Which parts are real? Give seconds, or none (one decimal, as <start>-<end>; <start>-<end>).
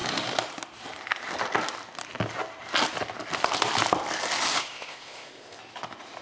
0.0-4.6; 5.6-6.2